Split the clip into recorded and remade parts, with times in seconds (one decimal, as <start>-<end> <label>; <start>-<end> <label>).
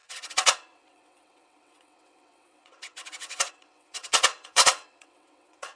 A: 0.0-5.8 remade